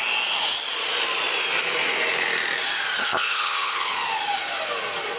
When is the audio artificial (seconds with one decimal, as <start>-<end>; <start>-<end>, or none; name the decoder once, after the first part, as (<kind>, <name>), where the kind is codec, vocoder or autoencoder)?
3.0-3.9 (codec, HILCodec)